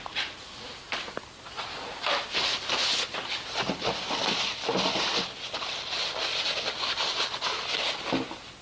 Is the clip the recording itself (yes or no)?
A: yes